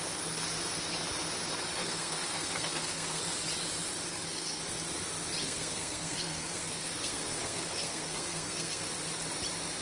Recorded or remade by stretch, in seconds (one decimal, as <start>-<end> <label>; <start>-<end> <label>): 0.0-1.8 recorded; 1.8-3.2 remade; 3.2-4.1 recorded; 4.1-4.6 remade; 4.6-5.4 recorded; 5.4-8.9 remade; 8.9-9.8 recorded